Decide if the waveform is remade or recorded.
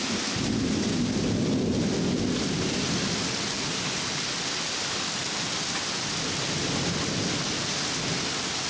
recorded